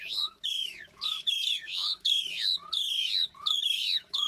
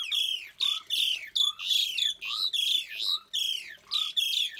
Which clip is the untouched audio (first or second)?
second